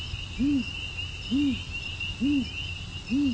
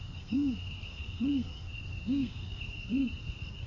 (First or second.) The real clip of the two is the first